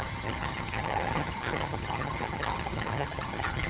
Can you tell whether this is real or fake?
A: fake